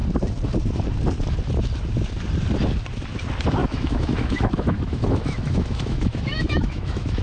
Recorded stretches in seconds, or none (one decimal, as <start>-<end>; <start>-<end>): 0.0-3.6